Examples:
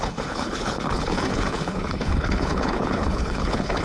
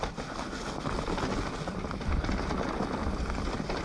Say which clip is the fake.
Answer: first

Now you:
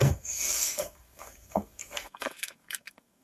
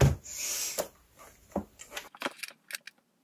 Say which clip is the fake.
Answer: first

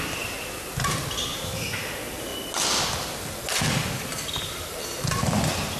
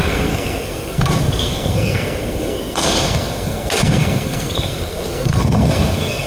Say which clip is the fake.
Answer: second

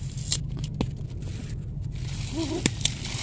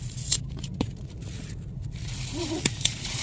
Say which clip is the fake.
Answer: second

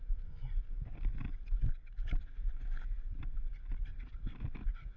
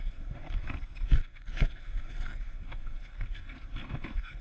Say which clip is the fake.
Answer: second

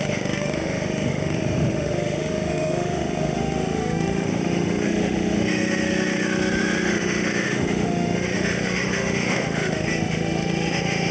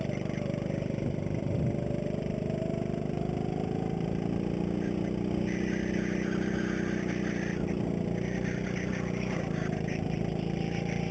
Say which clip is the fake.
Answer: first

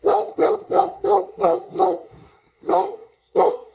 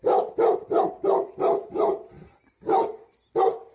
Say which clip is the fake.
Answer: first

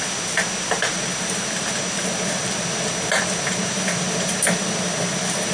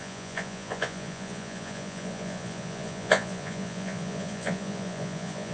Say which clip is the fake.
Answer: second